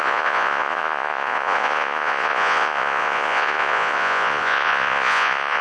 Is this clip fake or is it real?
fake